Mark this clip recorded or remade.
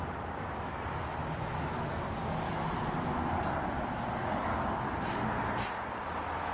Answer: recorded